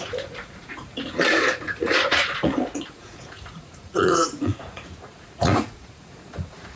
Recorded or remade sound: remade